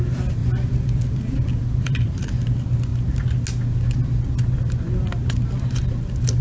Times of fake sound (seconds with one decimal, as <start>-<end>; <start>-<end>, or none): 0.4-2.2